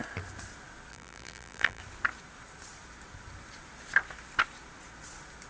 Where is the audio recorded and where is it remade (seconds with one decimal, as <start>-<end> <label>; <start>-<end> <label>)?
0.0-0.9 recorded; 0.9-1.8 remade; 1.8-5.5 recorded